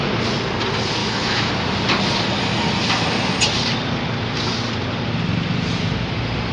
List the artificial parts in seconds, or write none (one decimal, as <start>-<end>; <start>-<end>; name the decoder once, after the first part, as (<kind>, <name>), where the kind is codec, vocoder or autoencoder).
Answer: 1.0-1.5 (autoencoder, DAC-VAE)